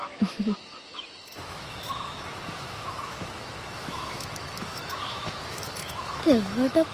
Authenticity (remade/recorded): remade